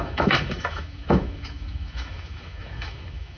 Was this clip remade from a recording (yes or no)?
yes